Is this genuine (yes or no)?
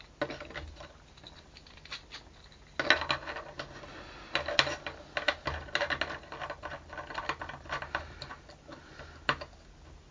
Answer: yes